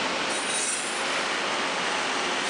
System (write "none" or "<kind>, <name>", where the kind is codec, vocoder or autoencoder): none